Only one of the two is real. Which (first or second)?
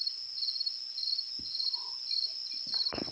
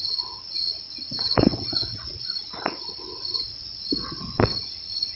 first